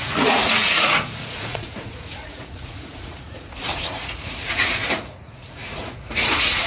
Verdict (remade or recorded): remade